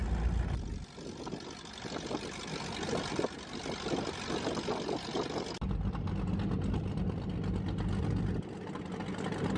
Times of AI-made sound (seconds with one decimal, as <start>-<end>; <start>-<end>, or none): none